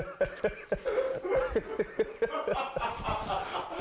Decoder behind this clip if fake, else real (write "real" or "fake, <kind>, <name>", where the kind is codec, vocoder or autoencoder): real